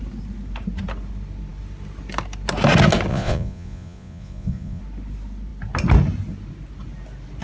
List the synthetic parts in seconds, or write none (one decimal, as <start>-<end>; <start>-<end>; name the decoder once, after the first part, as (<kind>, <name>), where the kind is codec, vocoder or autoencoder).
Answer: 3.1-4.8 (vocoder, Vocos)